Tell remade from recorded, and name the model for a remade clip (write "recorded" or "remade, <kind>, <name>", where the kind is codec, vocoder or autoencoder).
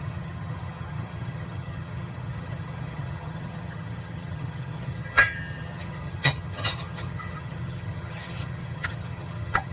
remade, vocoder, HiFi-GAN